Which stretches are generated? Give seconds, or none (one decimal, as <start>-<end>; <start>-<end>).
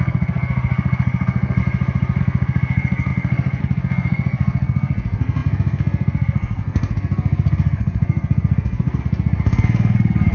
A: 0.0-1.6; 2.2-10.3